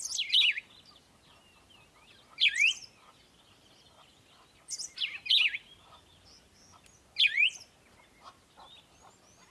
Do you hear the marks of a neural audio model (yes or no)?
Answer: no